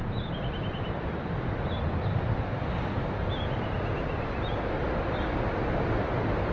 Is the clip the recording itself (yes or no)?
yes